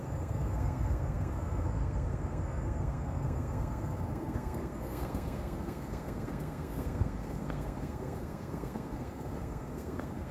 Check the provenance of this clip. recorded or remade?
remade